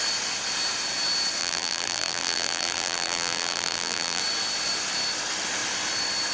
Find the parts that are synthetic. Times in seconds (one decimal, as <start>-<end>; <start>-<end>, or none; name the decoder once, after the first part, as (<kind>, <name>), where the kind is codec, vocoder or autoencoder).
1.4-4.2 (vocoder, BigVGAN v2)